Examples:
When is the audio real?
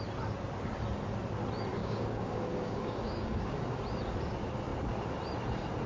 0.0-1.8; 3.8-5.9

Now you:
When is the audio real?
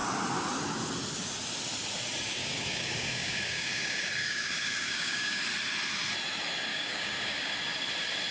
0.0-2.4; 5.4-6.7; 7.5-8.3